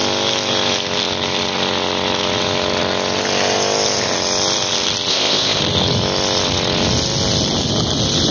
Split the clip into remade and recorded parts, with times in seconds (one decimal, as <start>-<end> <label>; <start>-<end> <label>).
0.0-5.1 recorded; 5.1-5.6 remade; 5.6-8.3 recorded